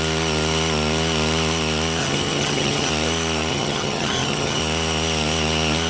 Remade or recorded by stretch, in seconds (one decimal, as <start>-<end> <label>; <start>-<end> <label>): 0.0-2.0 recorded; 2.0-2.9 remade; 2.9-3.5 recorded; 3.5-4.6 remade; 4.6-5.9 recorded